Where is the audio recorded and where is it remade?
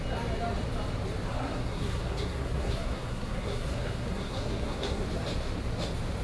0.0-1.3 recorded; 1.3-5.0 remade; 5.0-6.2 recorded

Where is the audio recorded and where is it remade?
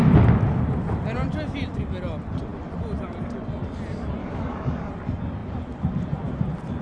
0.0-4.2 recorded; 4.2-4.9 remade; 4.9-6.8 recorded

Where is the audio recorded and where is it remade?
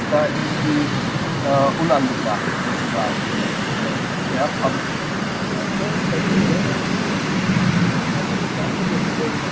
0.0-8.1 recorded; 8.1-8.9 remade; 8.9-9.5 recorded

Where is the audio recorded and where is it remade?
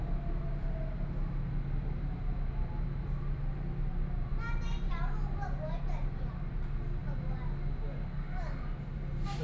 0.0-9.4 recorded